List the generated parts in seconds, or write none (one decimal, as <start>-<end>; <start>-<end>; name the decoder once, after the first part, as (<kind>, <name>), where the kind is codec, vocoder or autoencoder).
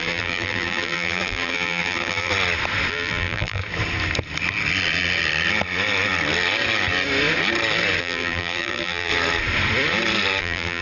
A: 0.0-2.3 (vocoder, BigVGAN v2); 2.9-3.6; 8.0-9.1; 10.4-10.8